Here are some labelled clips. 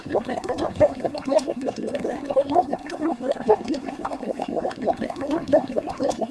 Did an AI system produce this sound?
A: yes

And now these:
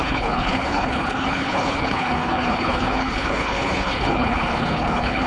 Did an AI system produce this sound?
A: yes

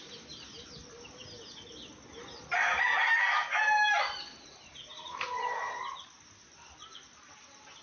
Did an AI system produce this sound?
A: no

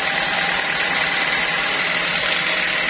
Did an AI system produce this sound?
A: no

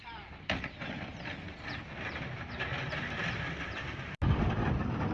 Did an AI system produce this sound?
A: no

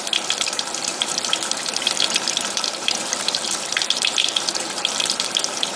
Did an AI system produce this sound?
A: yes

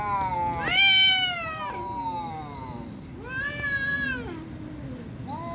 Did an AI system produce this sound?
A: no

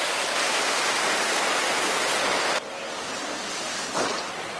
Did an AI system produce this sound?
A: no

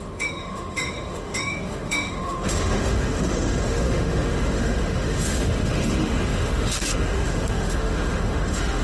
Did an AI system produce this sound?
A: yes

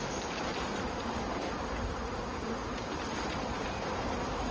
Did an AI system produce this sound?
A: no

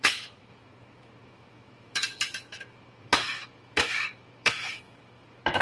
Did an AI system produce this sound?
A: yes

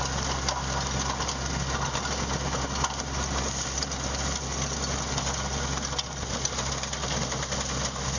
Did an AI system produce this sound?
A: no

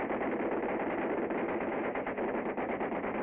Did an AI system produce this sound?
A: no